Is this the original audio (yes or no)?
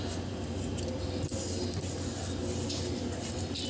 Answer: yes